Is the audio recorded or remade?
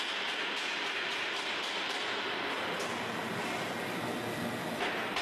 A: recorded